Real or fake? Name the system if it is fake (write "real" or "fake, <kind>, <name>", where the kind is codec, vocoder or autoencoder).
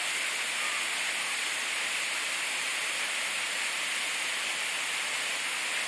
real